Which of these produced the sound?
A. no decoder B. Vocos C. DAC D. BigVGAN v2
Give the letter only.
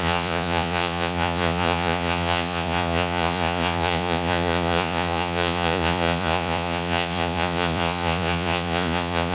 B